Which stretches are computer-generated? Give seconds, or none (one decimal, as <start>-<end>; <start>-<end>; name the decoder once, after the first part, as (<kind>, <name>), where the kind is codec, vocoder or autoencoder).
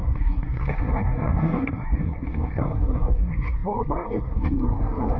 0.0-5.2 (codec, SNAC)